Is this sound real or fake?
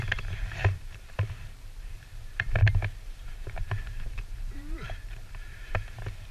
fake